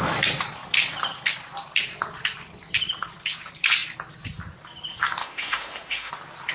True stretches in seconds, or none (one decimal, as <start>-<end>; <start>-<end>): 0.0-5.2; 6.1-6.5